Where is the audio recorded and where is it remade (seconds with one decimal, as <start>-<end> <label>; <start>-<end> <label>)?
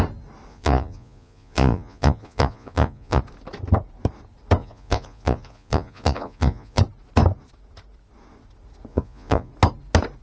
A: 0.0-0.5 recorded; 0.5-3.2 remade; 3.2-4.6 recorded; 4.6-6.8 remade; 6.8-8.9 recorded; 8.9-9.5 remade; 9.5-10.2 recorded